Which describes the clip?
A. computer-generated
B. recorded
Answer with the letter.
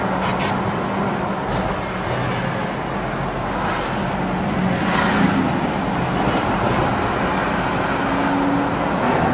B